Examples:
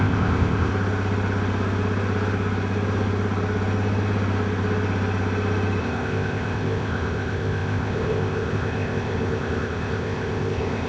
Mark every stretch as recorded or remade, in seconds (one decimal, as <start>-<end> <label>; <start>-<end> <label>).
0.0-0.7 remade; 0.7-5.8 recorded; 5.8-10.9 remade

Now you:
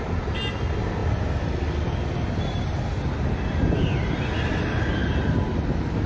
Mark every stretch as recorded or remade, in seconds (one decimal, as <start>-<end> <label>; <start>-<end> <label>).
0.0-6.1 recorded

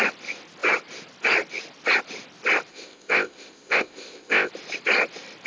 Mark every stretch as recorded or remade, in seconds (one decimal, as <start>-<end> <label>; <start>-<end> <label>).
0.0-2.7 recorded; 2.7-4.5 remade; 4.5-5.5 recorded